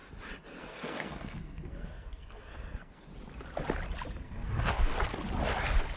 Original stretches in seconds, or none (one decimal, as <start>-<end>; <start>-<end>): 0.0-0.6; 3.1-4.2; 4.9-6.0